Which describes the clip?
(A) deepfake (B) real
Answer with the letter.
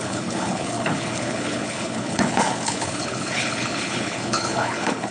A